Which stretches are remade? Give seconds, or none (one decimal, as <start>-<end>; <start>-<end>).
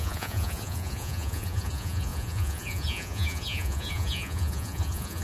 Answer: 0.0-5.2